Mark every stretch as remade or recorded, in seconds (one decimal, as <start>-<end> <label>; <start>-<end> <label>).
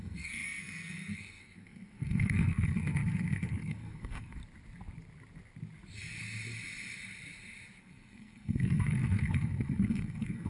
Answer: 0.0-4.4 remade; 4.4-7.8 recorded; 7.8-10.5 remade